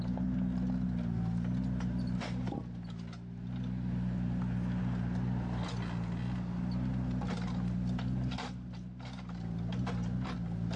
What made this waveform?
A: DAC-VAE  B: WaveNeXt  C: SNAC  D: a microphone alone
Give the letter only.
D